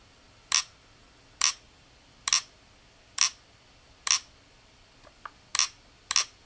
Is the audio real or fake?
real